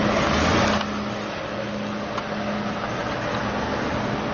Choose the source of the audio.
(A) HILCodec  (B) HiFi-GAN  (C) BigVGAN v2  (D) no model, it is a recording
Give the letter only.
D